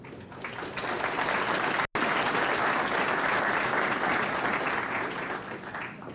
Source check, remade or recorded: recorded